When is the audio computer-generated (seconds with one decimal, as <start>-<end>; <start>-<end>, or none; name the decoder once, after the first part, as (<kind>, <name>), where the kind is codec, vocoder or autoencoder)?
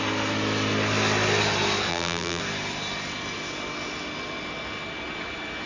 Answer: 1.9-2.4 (vocoder, BigVGAN v2)